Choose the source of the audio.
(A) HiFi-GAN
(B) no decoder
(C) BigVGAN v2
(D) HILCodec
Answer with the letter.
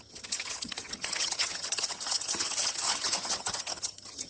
A